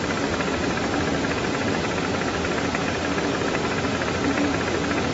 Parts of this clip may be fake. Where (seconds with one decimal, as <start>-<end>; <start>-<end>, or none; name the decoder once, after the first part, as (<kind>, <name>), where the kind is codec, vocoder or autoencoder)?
1.1-4.2 (vocoder, BigVGAN v2)